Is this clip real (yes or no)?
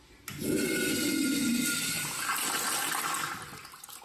yes